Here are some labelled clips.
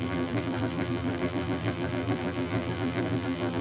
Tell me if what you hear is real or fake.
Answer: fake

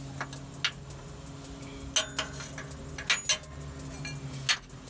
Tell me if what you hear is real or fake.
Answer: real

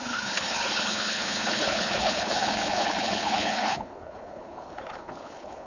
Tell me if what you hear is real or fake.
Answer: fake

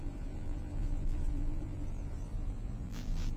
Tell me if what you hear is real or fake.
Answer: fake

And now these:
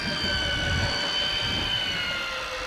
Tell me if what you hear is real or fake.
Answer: real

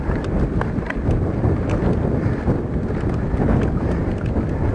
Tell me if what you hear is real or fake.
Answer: real